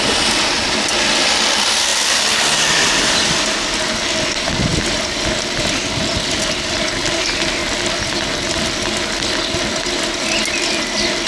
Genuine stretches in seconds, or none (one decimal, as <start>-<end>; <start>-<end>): 7.6-9.8